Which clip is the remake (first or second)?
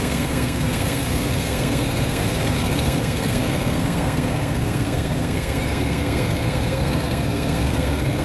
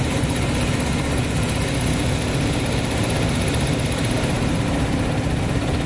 first